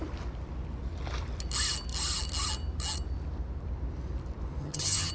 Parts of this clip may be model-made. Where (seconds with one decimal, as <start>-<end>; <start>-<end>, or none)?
4.6-5.1